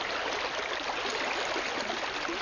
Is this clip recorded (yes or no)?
yes